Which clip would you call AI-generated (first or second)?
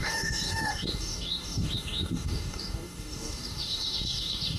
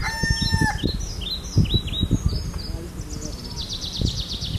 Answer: first